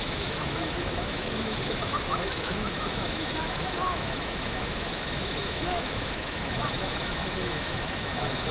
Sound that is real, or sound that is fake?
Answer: fake